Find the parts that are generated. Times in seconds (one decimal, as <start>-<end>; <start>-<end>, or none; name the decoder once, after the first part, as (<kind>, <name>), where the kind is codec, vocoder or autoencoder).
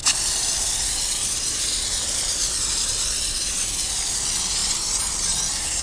0.0-3.5 (vocoder, BigVGAN v2); 4.6-5.8